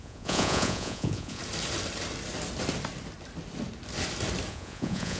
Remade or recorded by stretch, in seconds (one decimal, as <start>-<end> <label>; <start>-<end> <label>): 0.0-1.4 remade; 1.4-4.5 recorded; 4.5-5.2 remade